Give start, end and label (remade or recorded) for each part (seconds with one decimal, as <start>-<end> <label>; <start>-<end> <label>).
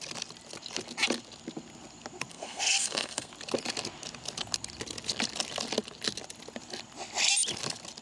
0.0-2.3 recorded; 2.3-3.3 remade; 3.3-8.0 recorded